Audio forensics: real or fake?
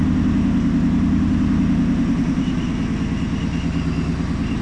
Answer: real